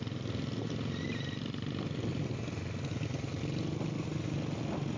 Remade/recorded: recorded